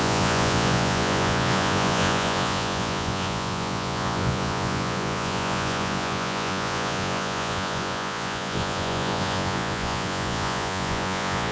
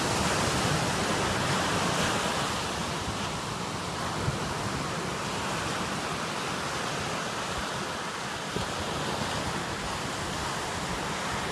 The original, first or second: second